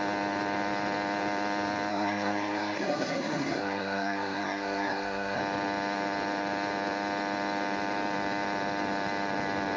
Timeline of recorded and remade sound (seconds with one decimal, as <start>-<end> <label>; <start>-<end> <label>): 0.0-1.9 recorded; 1.9-5.4 remade; 5.4-9.8 recorded